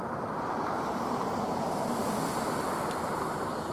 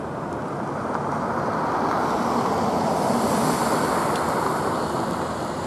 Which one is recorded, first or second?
second